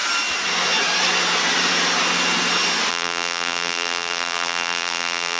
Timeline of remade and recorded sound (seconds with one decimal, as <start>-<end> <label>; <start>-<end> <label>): 0.0-2.9 recorded; 2.9-5.4 remade